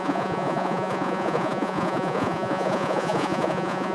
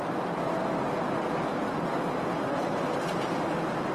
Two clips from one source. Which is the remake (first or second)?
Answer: first